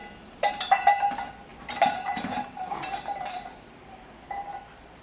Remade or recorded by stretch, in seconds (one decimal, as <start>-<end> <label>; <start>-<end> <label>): 0.0-1.5 recorded; 1.5-4.0 remade; 4.0-5.0 recorded